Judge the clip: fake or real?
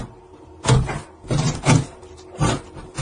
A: real